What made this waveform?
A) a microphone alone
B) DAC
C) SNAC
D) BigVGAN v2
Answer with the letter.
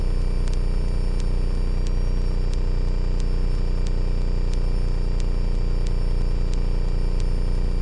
A